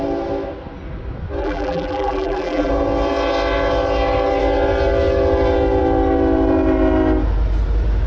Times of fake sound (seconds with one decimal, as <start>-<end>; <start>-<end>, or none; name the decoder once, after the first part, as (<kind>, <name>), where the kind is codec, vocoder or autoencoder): 1.4-2.7 (vocoder, BigVGAN v2)